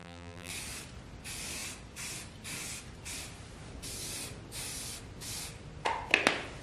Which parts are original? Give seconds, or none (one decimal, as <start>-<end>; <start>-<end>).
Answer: 0.5-6.6